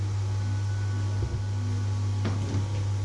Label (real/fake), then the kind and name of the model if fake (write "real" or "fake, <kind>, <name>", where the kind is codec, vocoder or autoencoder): real